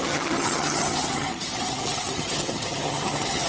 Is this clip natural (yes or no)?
no